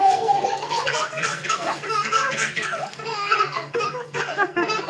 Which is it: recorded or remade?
remade